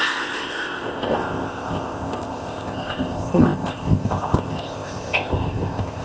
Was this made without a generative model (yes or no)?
no